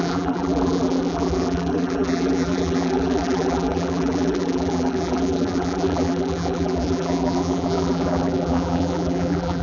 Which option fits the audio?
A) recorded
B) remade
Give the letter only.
B